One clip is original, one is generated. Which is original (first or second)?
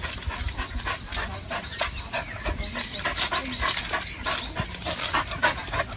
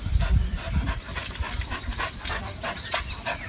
first